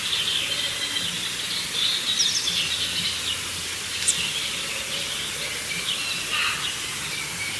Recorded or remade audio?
recorded